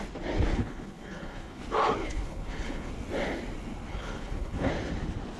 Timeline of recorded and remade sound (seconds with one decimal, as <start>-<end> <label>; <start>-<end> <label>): 0.0-0.5 recorded; 0.5-1.6 remade; 1.6-2.0 recorded; 2.0-2.9 remade; 2.9-3.9 recorded; 3.9-4.7 remade; 4.7-5.4 recorded